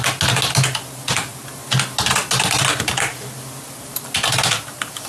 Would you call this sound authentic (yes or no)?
yes